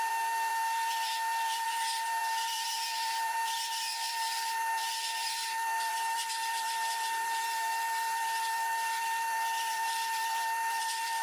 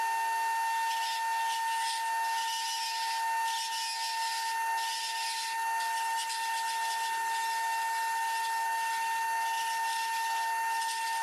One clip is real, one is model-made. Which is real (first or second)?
second